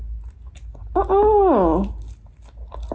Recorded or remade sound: recorded